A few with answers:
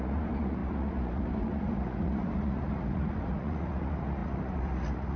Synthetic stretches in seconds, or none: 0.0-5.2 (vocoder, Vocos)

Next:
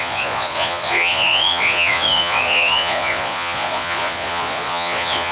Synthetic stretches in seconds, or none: 0.0-5.3 (vocoder, Vocos)

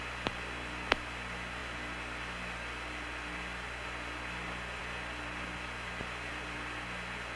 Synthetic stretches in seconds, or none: none